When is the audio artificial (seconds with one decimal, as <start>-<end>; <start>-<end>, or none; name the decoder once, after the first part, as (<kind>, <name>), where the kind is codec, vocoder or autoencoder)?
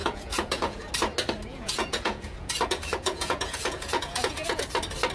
0.0-0.8 (vocoder, Vocos); 1.5-4.6